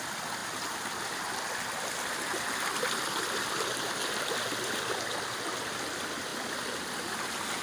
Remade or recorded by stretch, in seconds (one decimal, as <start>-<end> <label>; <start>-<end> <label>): 0.0-7.6 recorded